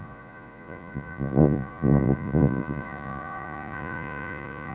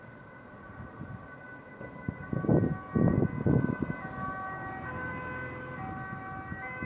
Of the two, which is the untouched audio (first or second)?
second